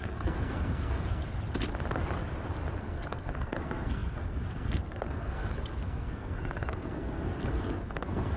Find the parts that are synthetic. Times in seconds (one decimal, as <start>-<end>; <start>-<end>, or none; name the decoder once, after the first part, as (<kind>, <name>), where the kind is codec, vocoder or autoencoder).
0.0-1.2 (codec, SNAC); 2.8-8.4

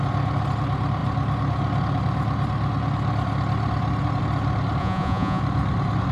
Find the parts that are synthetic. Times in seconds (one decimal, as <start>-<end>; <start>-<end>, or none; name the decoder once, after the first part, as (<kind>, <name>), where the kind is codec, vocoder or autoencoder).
4.8-5.4 (vocoder, Vocos)

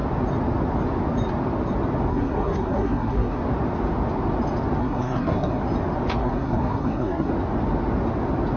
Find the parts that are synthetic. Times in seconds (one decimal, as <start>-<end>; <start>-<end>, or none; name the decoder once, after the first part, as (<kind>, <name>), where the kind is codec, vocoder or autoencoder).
2.1-3.4 (codec, SNAC); 4.8-5.6; 6.2-7.3

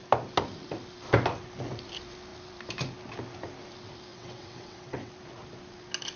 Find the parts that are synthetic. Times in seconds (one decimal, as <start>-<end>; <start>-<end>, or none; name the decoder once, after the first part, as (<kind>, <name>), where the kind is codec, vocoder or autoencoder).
4.1-5.1 (vocoder, WaveNeXt)

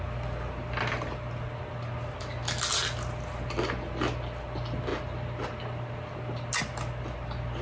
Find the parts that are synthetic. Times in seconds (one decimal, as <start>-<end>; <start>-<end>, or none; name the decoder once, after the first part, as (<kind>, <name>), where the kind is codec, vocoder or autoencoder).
none

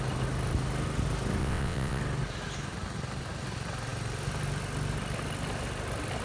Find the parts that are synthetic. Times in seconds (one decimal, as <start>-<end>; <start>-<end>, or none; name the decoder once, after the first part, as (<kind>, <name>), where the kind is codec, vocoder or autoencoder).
1.4-2.0 (vocoder, WaveNeXt)